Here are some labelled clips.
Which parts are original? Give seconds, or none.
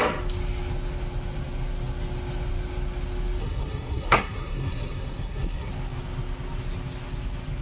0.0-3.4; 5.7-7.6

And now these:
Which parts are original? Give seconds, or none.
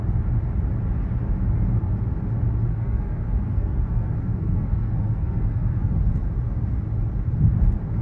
0.0-2.7; 5.9-8.0